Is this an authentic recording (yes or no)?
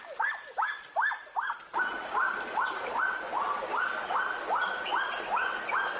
yes